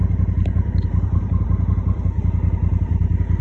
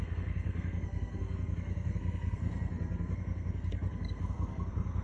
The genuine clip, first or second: first